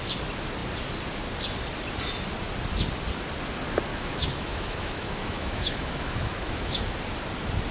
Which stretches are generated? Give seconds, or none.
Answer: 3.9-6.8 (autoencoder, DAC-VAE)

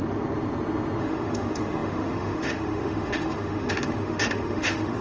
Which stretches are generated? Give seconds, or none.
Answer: 1.0-5.0 (autoencoder, DAC-VAE)

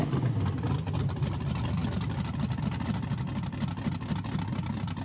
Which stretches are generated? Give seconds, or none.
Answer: none